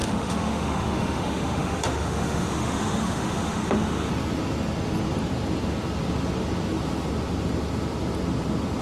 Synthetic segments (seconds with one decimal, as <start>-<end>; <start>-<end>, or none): 0.0-4.1